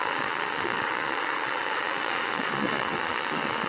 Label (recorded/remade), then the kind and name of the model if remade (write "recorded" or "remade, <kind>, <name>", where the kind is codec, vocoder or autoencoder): remade, vocoder, Vocos